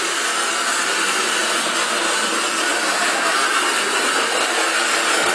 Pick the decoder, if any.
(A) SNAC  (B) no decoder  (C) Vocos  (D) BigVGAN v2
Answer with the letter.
B